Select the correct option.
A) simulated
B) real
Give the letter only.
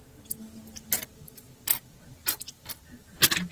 B